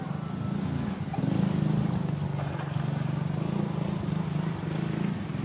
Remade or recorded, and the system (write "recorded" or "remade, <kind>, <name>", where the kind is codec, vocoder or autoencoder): recorded